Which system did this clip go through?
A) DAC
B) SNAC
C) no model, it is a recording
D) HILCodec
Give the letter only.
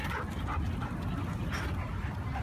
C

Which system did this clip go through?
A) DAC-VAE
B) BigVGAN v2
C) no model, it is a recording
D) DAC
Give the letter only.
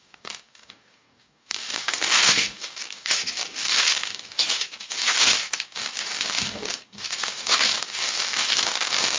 D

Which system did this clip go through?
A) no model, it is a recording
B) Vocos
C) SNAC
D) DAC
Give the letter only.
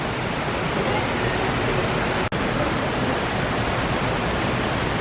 A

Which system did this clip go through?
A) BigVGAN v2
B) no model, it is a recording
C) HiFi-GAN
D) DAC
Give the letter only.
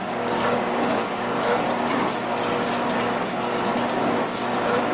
D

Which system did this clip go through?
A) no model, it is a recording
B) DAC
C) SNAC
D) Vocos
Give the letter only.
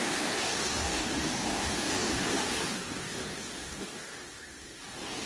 B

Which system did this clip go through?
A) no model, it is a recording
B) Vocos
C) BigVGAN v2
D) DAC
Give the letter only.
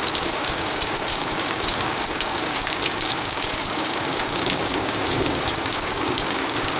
D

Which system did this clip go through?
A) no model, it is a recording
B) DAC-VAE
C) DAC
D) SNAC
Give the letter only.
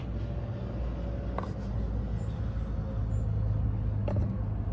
A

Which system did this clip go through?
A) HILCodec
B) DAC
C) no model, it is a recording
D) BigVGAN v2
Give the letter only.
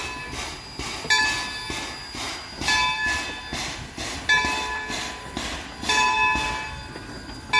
C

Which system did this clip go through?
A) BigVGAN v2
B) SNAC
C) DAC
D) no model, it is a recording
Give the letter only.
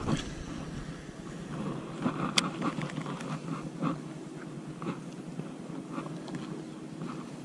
D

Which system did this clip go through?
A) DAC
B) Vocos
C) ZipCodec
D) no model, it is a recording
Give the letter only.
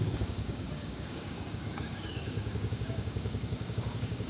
A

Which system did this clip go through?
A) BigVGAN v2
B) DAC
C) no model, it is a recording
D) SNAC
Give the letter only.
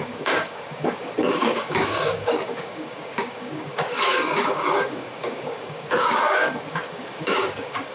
B